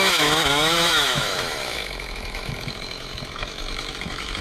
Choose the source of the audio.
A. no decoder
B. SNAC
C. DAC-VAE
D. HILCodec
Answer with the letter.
C